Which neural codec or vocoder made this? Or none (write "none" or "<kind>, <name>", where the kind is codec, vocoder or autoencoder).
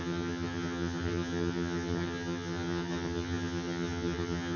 vocoder, HiFi-GAN